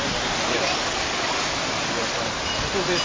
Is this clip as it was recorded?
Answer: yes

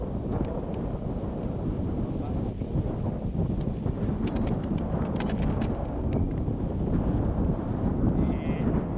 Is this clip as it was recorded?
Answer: yes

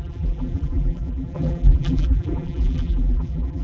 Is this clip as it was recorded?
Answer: no